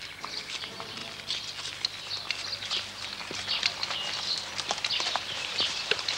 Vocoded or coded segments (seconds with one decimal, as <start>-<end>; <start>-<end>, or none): 0.0-1.0; 4.7-6.2